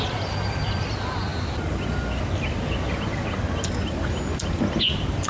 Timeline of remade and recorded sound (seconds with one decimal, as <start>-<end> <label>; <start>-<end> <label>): 0.0-5.3 recorded